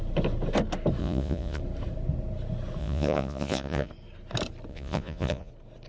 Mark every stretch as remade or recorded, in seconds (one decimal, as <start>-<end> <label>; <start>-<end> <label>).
0.0-1.0 recorded; 1.0-1.6 remade; 1.6-2.8 recorded; 2.8-3.9 remade; 3.9-4.7 recorded; 4.7-5.5 remade; 5.5-5.9 recorded